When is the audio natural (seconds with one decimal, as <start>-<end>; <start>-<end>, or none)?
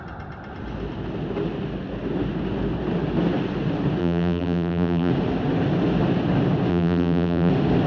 0.0-4.0; 5.1-6.7; 7.5-7.9